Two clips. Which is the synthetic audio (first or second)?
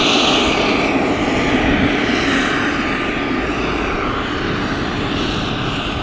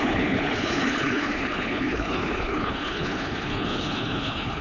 second